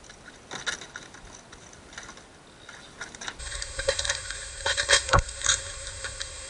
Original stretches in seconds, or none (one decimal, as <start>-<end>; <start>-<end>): 0.0-3.4